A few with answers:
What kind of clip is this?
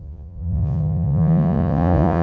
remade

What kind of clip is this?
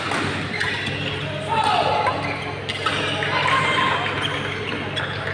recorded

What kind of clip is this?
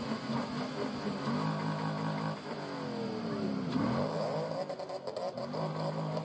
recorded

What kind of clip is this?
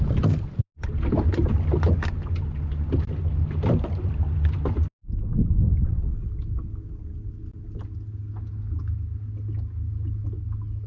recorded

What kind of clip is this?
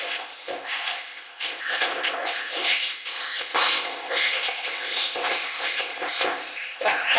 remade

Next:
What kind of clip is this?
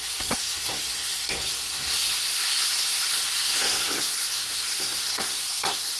remade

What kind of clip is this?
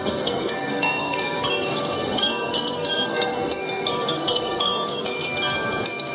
remade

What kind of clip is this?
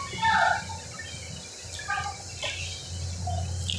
recorded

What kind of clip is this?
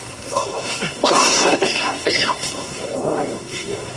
remade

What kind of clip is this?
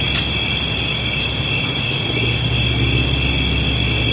recorded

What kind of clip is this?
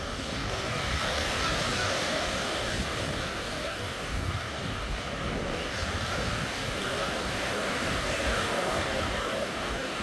remade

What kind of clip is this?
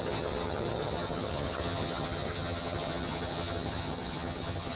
remade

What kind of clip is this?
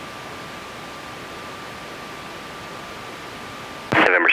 recorded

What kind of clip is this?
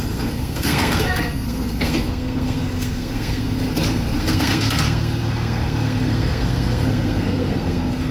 remade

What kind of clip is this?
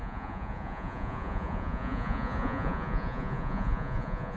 remade